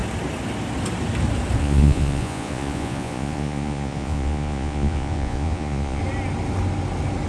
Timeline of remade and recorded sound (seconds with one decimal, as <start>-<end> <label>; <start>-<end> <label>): 0.0-1.6 recorded; 1.6-6.0 remade; 6.0-7.3 recorded